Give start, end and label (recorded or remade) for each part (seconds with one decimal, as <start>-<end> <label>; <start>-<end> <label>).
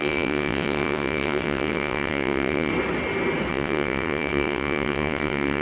0.0-2.7 remade; 2.7-3.5 recorded; 3.5-5.6 remade